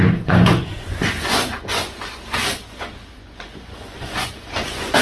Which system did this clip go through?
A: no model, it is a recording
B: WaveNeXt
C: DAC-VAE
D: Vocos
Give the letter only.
D